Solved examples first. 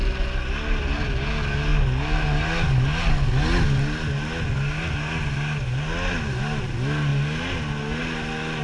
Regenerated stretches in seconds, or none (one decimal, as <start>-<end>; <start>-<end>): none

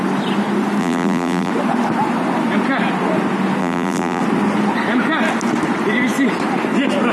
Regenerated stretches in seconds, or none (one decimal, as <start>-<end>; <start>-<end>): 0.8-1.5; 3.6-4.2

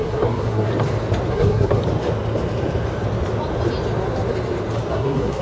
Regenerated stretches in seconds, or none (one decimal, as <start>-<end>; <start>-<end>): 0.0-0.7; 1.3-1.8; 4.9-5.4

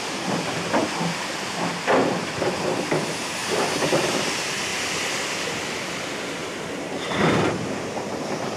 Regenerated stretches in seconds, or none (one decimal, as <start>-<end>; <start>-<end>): 3.4-4.3; 6.4-7.1

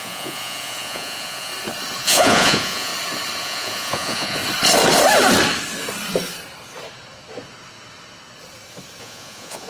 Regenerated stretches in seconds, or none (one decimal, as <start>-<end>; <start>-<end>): 0.0-1.5; 2.0-2.9; 3.4-4.4; 9.0-9.7